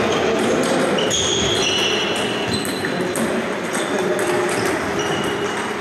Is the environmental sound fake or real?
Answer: real